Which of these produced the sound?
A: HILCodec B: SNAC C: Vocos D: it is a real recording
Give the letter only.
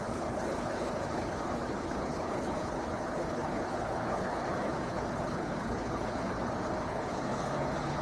A